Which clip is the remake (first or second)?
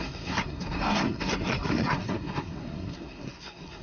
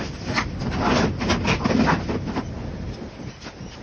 first